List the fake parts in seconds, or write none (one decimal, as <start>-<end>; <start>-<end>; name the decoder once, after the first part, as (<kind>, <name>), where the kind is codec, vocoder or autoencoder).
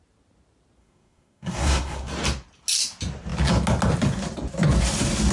0.8-2.1 (codec, SNAC)